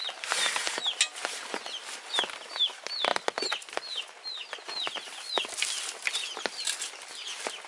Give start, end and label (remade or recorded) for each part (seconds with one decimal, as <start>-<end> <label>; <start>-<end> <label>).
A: 0.0-7.7 recorded